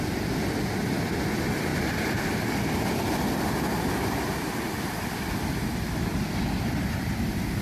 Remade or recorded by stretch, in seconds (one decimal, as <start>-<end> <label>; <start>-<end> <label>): 0.0-1.7 recorded; 1.7-5.3 remade; 5.3-6.1 recorded; 6.1-7.6 remade